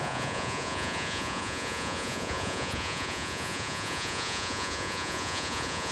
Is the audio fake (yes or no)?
yes